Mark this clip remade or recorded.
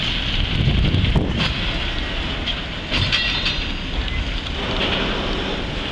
recorded